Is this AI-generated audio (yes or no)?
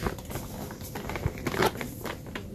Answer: no